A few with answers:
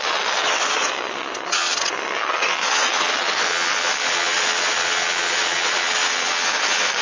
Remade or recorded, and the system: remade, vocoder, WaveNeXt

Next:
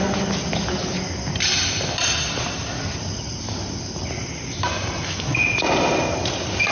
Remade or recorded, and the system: recorded